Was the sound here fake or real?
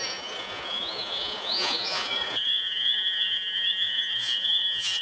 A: fake